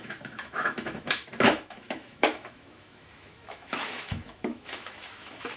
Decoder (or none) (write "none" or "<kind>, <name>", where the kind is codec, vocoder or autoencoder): autoencoder, DAC-VAE